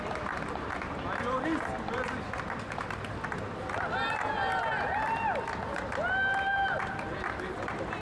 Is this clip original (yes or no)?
yes